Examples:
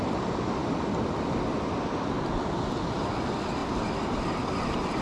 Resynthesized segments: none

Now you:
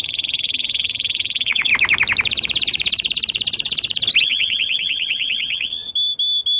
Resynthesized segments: 0.0-1.7; 4.2-5.9

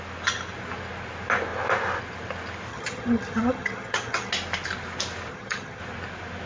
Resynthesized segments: 2.7-4.3; 5.3-5.8

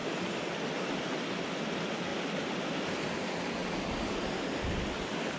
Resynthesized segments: none

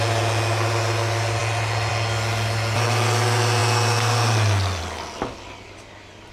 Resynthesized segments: none